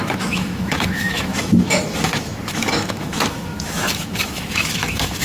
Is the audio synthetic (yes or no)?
yes